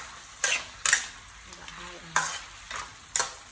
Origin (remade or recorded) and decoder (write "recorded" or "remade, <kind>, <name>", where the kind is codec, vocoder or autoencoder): recorded